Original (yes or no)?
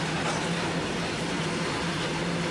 yes